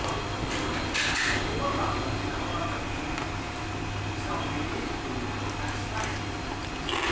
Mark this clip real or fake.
real